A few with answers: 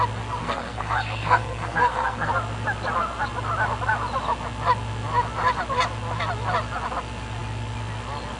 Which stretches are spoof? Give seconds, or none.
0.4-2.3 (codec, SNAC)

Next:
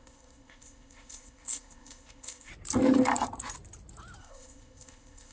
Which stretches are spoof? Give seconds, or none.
0.0-2.5 (codec, ZipCodec); 4.2-5.3

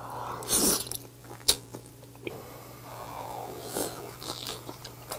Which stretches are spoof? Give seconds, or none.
1.2-1.9 (vocoder, BigVGAN v2); 2.9-4.6

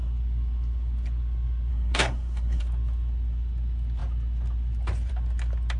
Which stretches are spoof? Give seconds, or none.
1.7-2.6 (codec, SNAC)

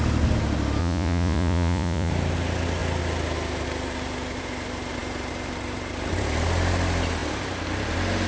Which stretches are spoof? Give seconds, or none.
0.8-2.1 (vocoder, Vocos)

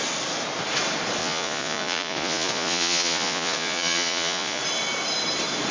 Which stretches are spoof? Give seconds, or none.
1.2-4.6 (vocoder, Vocos)